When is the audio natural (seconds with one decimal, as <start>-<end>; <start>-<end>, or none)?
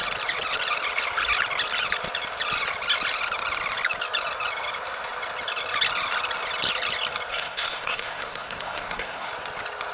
0.0-7.3; 9.3-9.9